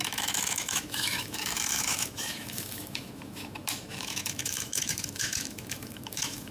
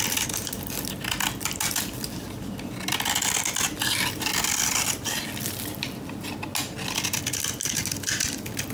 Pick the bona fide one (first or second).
second